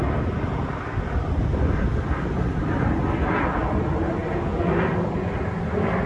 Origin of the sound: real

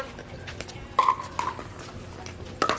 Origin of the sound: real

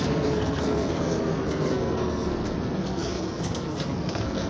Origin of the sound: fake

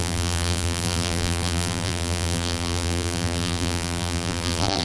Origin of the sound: fake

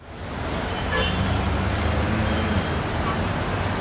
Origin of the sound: fake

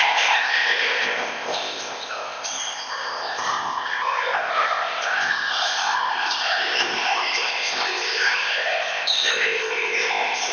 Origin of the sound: fake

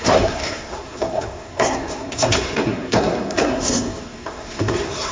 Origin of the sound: fake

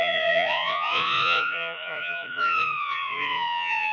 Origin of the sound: fake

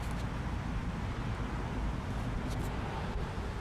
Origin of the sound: real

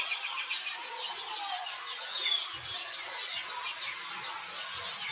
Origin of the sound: real